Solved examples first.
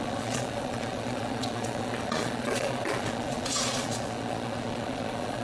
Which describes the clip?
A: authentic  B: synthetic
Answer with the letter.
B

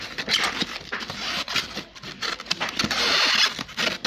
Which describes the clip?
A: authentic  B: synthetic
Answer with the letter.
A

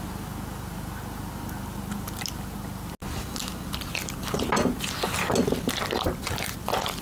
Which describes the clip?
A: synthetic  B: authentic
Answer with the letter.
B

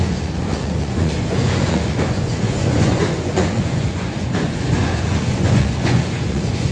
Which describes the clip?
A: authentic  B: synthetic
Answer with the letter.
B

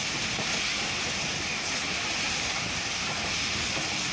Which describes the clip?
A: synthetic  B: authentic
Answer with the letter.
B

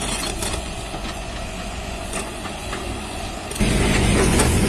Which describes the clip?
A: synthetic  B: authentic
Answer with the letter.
A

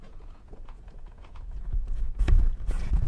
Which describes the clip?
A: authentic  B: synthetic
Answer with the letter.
B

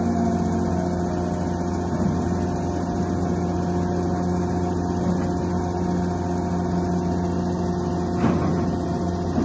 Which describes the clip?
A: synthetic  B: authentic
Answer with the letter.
B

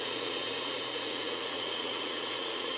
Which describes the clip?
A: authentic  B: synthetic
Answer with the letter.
B